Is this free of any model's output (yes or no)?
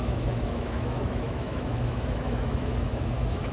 no